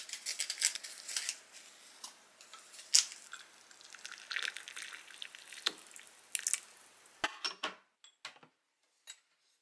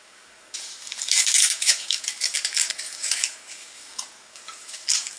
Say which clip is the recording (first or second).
first